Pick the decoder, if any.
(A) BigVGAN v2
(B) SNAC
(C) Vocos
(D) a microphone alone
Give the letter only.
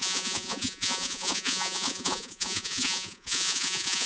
C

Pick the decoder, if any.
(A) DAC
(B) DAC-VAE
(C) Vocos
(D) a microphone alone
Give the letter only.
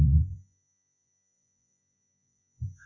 C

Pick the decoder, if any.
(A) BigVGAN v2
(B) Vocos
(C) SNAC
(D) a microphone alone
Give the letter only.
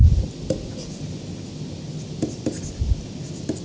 D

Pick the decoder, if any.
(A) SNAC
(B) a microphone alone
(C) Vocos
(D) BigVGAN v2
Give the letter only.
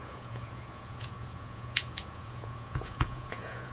C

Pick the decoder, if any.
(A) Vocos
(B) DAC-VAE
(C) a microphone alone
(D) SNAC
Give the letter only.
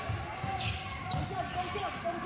C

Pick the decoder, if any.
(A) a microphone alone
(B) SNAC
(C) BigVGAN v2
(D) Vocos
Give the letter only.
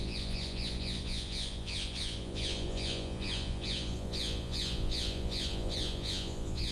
D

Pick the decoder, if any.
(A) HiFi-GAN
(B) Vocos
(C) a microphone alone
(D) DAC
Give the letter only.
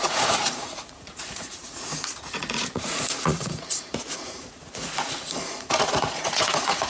B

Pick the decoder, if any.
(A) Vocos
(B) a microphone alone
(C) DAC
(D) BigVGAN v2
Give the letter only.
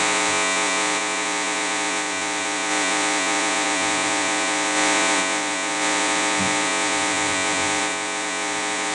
A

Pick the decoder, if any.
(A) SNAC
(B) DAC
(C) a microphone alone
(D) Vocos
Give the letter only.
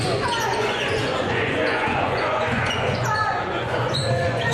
D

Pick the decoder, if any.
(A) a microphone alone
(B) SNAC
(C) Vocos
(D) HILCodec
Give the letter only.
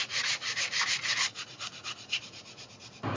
C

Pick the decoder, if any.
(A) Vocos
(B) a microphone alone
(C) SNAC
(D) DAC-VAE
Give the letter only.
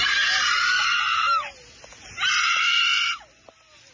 B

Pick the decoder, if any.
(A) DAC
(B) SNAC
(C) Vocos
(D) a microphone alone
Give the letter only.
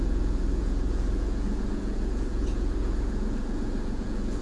C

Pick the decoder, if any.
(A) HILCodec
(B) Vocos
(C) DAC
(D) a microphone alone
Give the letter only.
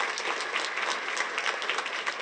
D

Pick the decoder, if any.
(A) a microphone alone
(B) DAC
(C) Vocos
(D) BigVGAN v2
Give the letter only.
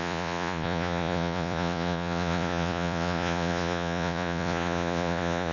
C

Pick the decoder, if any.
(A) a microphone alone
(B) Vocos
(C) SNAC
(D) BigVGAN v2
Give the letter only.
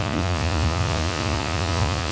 B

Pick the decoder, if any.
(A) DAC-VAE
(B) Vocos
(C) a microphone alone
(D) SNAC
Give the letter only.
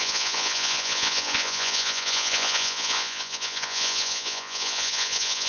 B